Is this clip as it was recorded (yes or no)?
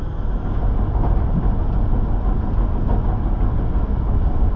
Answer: yes